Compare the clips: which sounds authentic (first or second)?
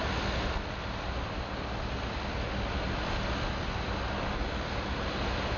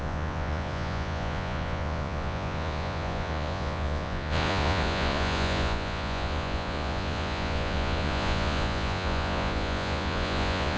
first